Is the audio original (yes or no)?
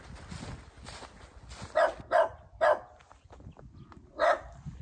yes